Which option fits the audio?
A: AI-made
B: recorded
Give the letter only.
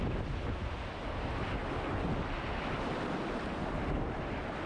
B